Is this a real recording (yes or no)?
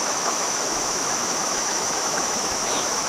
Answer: no